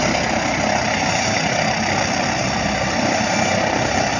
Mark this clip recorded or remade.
recorded